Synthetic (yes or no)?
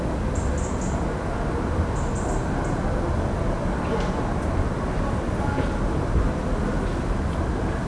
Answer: no